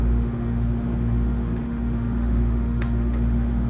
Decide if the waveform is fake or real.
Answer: fake